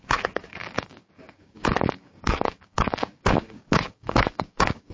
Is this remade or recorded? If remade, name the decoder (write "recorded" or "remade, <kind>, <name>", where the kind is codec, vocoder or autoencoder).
remade, codec, DAC